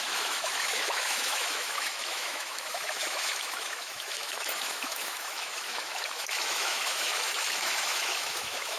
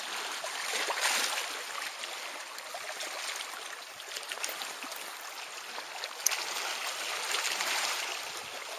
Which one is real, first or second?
second